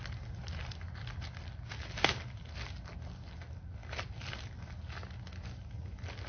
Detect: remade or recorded recorded